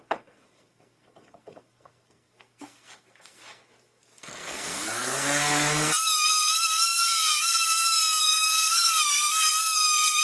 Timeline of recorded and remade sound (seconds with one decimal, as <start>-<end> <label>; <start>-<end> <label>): 0.0-10.2 remade